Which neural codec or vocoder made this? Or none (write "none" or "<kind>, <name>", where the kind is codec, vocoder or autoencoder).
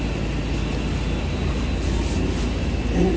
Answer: none